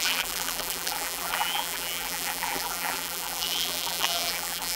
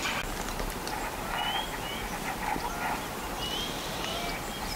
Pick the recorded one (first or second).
second